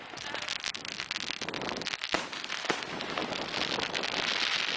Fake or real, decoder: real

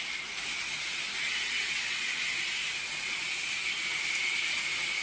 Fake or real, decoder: real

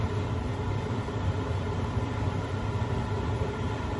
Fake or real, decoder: fake, vocoder, BigVGAN v2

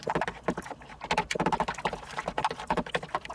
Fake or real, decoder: real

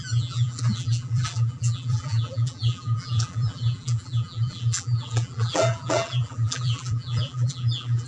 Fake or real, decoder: fake, vocoder, BigVGAN v2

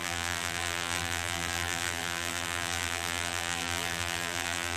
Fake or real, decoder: fake, vocoder, BigVGAN v2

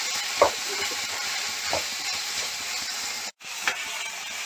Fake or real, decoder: fake, vocoder, BigVGAN v2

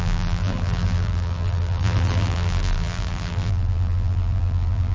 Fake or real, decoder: fake, vocoder, BigVGAN v2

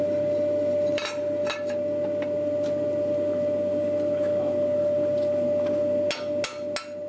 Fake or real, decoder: real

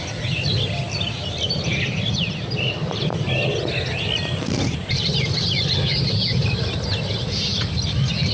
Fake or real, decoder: fake, vocoder, BigVGAN v2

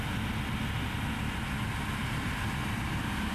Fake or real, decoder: real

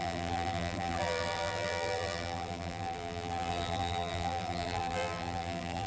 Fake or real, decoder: fake, vocoder, BigVGAN v2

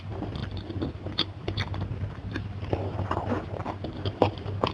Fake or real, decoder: fake, vocoder, BigVGAN v2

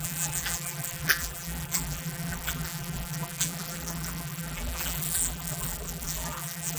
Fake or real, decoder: fake, vocoder, BigVGAN v2